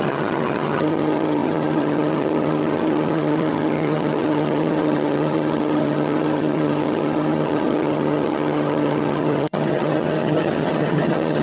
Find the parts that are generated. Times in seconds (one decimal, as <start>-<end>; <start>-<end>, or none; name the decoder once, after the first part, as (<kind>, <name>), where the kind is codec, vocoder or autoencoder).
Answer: 0.0-11.4 (vocoder, HiFi-GAN)